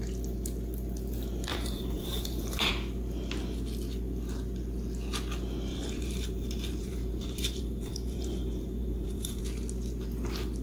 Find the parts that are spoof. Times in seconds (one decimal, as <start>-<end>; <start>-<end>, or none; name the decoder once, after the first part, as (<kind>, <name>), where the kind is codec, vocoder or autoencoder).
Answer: 1.5-2.7 (vocoder, BigVGAN v2); 5.7-9.4